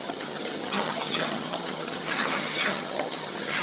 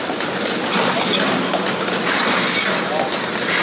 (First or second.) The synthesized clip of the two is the first